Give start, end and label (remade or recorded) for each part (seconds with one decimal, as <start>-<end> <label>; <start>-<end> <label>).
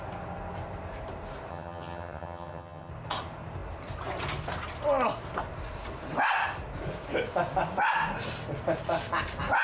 0.0-1.5 recorded; 1.5-2.9 remade; 2.9-9.6 recorded